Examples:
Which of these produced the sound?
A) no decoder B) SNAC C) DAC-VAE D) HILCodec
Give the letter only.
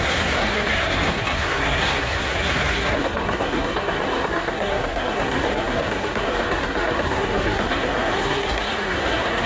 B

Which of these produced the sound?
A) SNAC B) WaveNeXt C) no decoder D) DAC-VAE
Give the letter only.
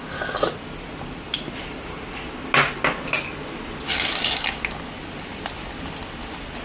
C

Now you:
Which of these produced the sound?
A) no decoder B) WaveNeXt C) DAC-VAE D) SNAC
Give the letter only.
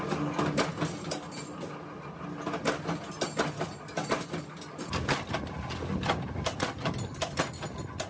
A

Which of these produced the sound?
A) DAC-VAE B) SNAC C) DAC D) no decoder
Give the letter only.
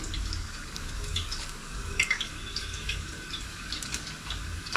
C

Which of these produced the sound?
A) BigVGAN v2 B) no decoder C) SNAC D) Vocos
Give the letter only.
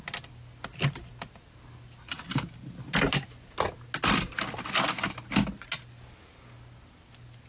B